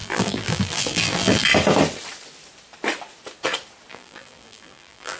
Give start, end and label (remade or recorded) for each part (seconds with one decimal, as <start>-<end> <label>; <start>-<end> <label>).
0.0-1.5 remade; 1.5-3.9 recorded; 3.9-5.2 remade